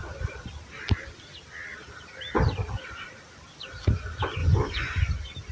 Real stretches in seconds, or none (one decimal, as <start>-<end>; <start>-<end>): 0.0-4.4; 5.1-5.5